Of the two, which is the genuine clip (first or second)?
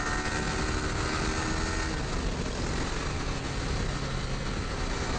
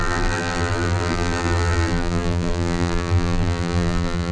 first